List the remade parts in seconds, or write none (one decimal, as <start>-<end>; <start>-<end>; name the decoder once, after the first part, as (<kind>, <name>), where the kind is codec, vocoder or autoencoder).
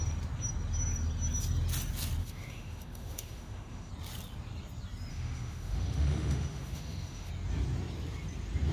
2.2-3.9 (autoencoder, DAC-VAE); 5.1-7.3